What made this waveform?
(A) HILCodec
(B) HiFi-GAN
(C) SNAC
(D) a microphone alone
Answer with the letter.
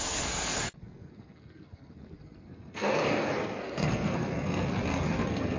C